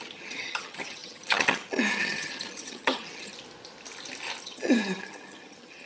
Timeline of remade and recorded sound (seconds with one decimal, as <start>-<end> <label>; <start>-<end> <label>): 0.0-3.3 remade; 3.3-4.4 recorded; 4.4-5.9 remade